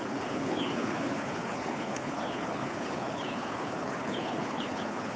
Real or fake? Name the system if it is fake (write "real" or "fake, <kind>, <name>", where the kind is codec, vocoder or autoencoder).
fake, codec, HILCodec